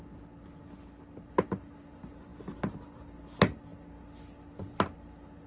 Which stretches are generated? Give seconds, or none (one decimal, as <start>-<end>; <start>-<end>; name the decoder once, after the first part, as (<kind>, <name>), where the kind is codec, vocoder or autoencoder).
none